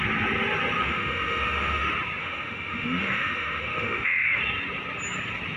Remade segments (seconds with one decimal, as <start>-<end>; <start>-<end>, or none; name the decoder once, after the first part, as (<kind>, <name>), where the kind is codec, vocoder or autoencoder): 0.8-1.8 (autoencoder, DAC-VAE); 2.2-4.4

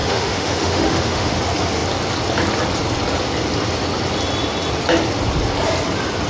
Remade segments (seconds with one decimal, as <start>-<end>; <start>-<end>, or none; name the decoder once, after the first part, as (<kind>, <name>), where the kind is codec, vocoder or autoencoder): 0.0-1.4 (autoencoder, DAC-VAE)

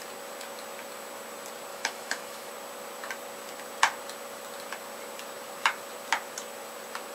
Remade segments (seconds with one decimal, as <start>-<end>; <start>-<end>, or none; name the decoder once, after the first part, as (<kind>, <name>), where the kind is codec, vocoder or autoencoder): 1.7-2.5 (autoencoder, DAC-VAE)

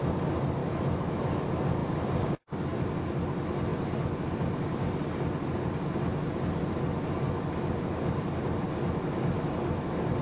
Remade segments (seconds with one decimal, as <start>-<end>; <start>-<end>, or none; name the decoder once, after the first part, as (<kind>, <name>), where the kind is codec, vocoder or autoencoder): 0.6-1.2 (autoencoder, DAC-VAE)